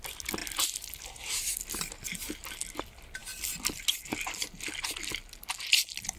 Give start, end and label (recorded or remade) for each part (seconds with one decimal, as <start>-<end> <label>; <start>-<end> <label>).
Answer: 0.0-6.2 recorded